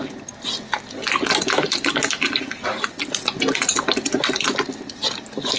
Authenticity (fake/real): real